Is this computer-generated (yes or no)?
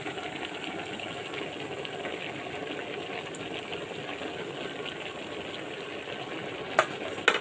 no